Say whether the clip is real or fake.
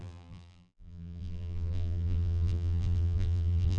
fake